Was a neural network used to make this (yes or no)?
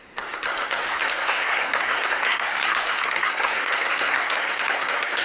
yes